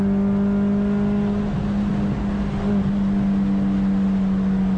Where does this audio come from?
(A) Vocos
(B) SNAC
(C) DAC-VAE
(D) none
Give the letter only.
D